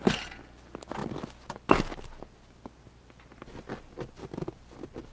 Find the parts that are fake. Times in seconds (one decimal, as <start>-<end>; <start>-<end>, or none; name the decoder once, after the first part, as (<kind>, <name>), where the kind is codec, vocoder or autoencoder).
none